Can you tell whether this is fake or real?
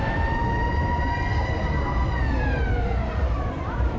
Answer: fake